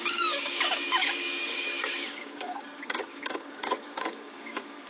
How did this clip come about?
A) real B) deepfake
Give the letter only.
B